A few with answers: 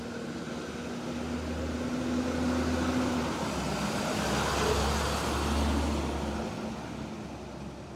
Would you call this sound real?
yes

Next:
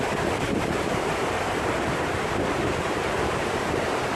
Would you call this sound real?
no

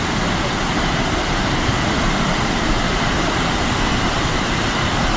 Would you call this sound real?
no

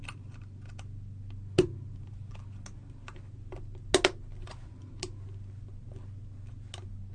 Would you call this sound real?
yes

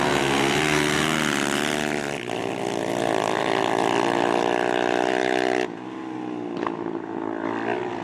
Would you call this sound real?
yes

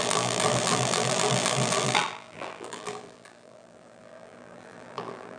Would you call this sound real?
no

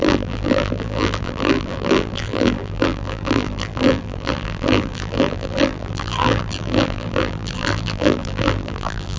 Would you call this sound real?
no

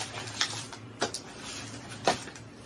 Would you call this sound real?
no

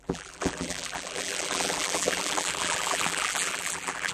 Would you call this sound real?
no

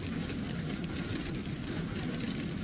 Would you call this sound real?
no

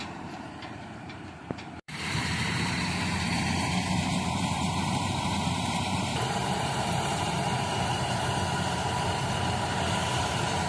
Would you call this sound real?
no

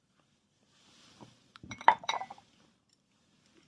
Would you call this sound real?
no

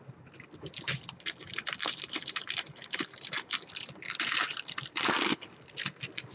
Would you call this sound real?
no